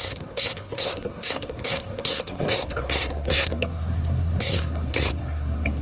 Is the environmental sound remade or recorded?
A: remade